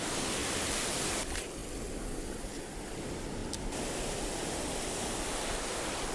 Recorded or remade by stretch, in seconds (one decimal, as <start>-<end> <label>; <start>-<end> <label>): 0.0-0.4 recorded; 0.4-1.0 remade; 1.0-6.1 recorded